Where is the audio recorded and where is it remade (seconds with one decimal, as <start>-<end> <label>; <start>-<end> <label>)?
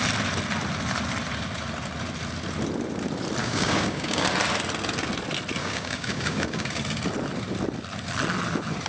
0.0-3.4 recorded; 3.4-4.3 remade; 4.3-5.6 recorded; 5.6-6.8 remade; 6.8-8.9 recorded